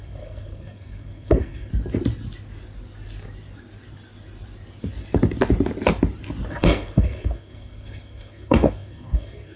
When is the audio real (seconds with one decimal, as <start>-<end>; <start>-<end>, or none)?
1.7-6.5